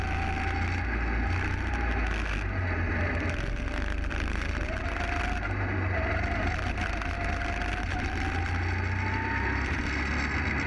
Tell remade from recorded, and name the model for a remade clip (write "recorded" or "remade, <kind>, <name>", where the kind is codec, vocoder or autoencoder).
recorded